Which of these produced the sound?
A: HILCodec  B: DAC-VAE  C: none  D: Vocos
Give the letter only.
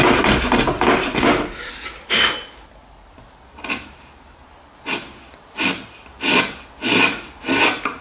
C